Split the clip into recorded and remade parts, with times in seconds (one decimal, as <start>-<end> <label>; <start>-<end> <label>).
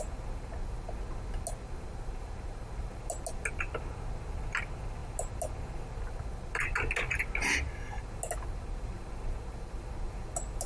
0.0-10.7 recorded